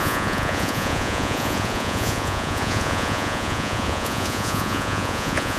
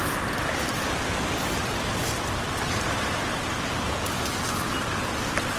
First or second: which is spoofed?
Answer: first